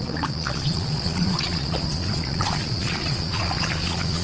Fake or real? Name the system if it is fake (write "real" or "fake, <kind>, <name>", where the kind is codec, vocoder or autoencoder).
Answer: fake, vocoder, Vocos